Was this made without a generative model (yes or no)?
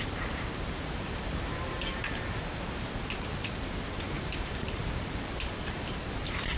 no